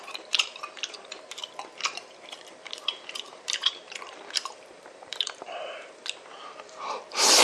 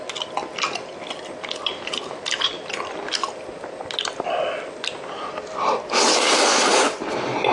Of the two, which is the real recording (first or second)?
second